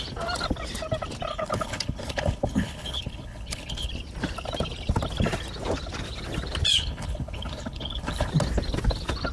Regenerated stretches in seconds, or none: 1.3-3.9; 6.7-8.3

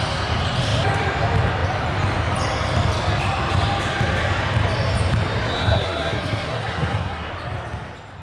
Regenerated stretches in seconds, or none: 5.6-7.3

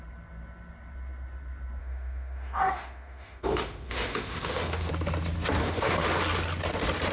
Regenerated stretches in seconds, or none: 1.8-4.9; 5.6-6.2